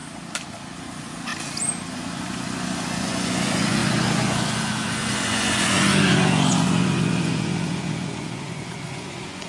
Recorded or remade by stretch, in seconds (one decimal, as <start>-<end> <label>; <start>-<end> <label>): 0.0-0.8 recorded; 0.8-1.3 remade; 1.3-1.9 recorded; 1.9-9.5 remade